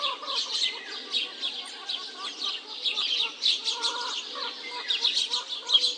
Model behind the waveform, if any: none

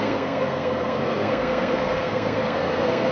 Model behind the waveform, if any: codec, SNAC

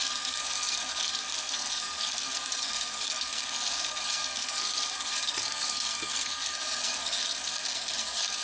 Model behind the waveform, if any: codec, SNAC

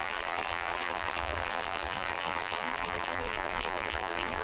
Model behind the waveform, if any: vocoder, BigVGAN v2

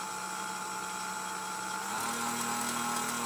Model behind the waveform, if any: none